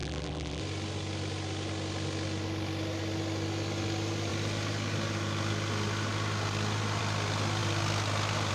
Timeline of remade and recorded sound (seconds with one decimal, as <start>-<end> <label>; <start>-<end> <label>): 0.0-0.6 remade; 0.6-8.5 recorded